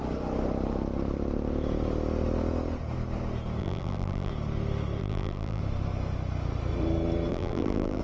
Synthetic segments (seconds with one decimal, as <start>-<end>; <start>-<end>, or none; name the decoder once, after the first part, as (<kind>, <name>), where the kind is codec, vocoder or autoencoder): 3.6-4.3 (vocoder, BigVGAN v2); 5.0-5.6; 7.3-8.0